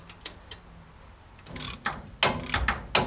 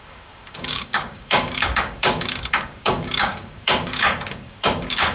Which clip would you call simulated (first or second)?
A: second